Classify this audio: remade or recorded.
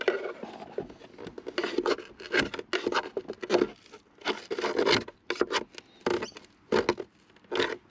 recorded